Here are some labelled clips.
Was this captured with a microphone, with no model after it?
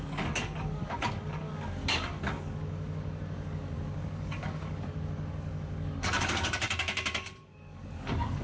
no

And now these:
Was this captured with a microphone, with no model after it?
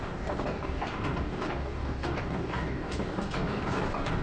no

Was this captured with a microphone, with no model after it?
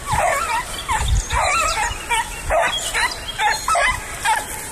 yes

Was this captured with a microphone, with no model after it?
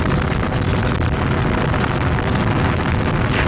yes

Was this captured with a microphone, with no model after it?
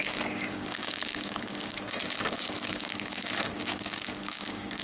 no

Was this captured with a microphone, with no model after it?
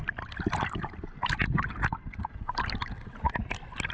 yes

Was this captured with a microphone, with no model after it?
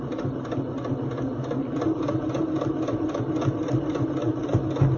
yes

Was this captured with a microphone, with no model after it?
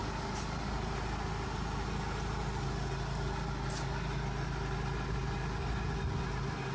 yes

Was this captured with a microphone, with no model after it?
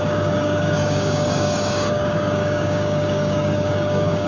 no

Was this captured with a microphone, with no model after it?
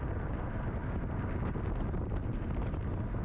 yes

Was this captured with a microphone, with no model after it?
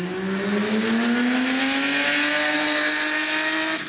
yes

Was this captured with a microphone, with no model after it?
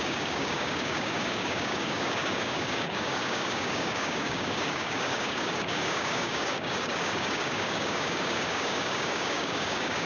no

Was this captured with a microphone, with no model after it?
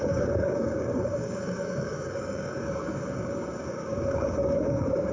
no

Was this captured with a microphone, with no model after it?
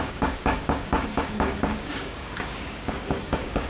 no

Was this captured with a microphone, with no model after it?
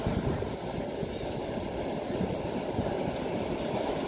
yes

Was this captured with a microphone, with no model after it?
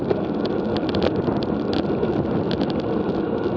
yes